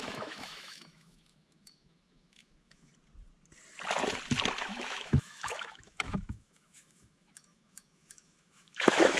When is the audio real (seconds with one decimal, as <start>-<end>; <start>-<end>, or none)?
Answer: 2.9-4.6

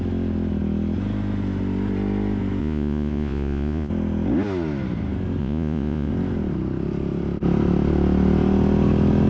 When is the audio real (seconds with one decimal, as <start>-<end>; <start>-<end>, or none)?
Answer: 0.0-2.6; 3.9-5.4; 6.1-9.3

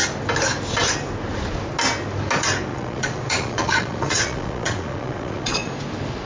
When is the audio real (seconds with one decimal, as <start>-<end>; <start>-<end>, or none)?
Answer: 0.0-2.7; 5.7-6.3

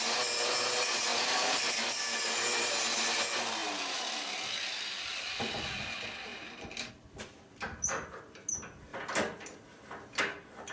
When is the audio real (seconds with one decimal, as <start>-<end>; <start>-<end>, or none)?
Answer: 0.0-1.1; 2.7-6.3; 6.9-8.9; 10.2-10.7